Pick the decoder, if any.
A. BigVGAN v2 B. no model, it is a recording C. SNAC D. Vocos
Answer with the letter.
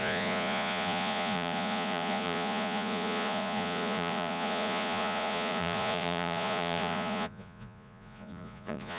D